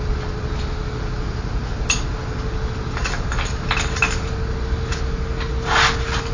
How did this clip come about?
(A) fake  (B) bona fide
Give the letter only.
B